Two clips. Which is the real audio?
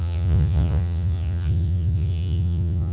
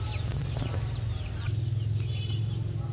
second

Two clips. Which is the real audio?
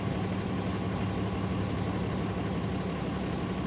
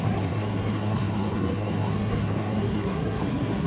first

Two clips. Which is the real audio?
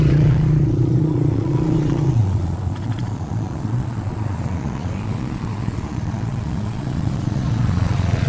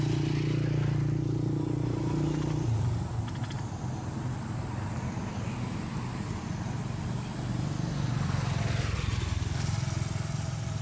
second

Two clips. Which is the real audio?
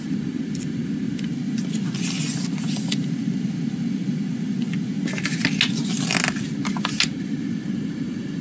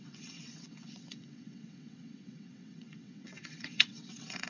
first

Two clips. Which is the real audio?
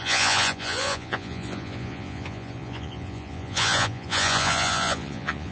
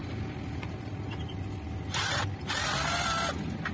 second